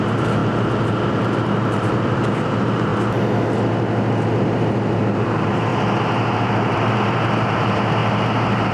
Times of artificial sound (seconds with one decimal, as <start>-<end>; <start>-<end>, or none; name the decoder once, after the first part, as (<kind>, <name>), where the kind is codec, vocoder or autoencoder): 0.0-0.4 (vocoder, BigVGAN v2); 1.1-2.9; 5.0-5.7; 6.3-8.0